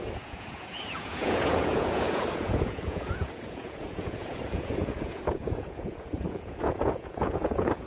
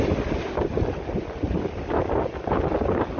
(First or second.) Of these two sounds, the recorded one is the second